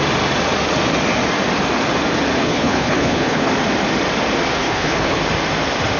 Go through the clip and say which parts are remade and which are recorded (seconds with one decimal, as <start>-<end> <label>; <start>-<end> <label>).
0.0-2.4 recorded; 2.4-3.5 remade; 3.5-4.5 recorded; 4.5-5.2 remade; 5.2-6.0 recorded